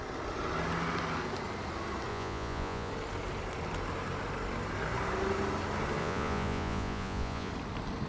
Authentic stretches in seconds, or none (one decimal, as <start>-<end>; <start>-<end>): 0.0-2.1; 2.9-6.0; 7.5-8.1